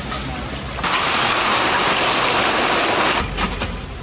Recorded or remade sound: recorded